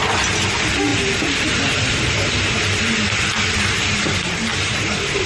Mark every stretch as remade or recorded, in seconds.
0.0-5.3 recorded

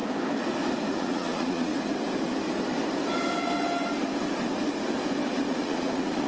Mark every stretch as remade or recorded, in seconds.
0.0-0.9 recorded; 0.9-1.7 remade; 1.7-5.5 recorded; 5.5-6.3 remade

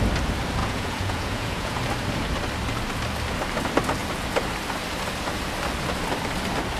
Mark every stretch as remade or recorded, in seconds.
0.0-0.6 recorded; 0.6-1.8 remade; 1.8-6.8 recorded

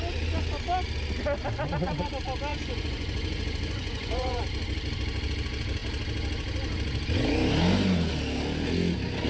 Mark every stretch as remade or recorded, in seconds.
0.0-2.5 recorded; 2.5-4.4 remade; 4.4-9.3 recorded

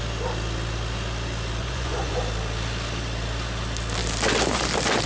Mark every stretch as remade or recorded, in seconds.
0.0-1.6 recorded; 1.6-2.2 remade; 2.2-5.1 recorded

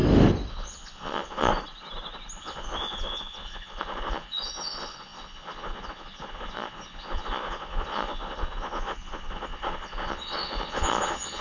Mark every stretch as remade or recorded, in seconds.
0.0-0.5 recorded; 0.5-1.5 remade; 1.5-2.4 recorded; 2.4-11.4 remade

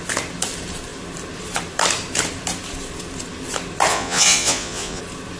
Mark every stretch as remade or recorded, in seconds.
0.0-3.9 recorded; 3.9-5.0 remade; 5.0-5.4 recorded

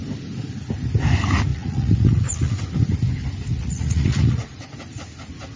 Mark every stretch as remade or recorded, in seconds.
0.0-1.5 recorded; 1.5-2.6 remade; 2.6-3.5 recorded; 3.5-4.7 remade; 4.7-5.6 recorded